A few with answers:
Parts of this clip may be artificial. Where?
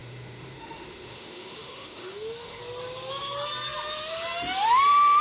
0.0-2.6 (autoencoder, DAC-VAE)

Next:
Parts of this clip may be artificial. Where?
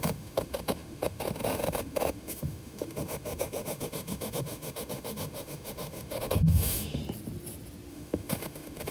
0.0-7.0 (autoencoder, DAC-VAE); 7.9-8.9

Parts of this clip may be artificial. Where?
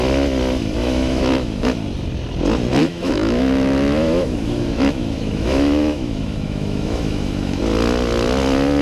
0.8-1.8 (autoencoder, DAC-VAE); 2.8-7.6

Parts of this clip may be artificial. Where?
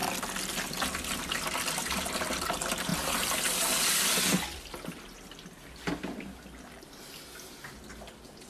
none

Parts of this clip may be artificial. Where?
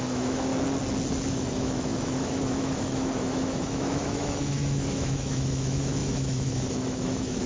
0.0-0.5 (autoencoder, DAC-VAE); 1.3-7.5